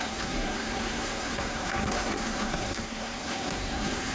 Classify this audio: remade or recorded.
remade